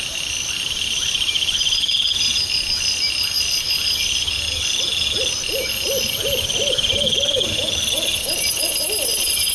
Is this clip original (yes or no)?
yes